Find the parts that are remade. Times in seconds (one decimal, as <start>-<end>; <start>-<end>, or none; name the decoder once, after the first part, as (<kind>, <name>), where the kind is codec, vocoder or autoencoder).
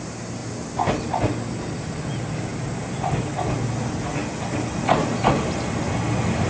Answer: none